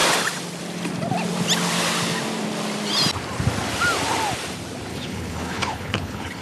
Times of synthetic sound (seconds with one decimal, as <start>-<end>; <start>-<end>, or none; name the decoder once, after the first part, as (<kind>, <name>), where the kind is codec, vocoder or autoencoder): 4.9-6.4 (codec, HILCodec)